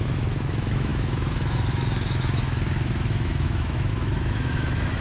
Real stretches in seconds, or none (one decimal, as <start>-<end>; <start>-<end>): none